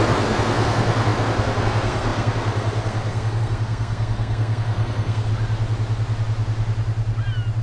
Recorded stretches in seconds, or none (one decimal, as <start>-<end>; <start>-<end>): 5.3-7.6

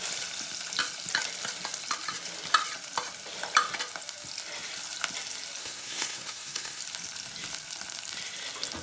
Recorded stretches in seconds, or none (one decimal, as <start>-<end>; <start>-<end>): 0.0-5.6; 6.8-8.8